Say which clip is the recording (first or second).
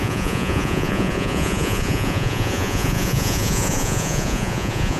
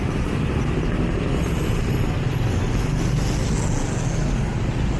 second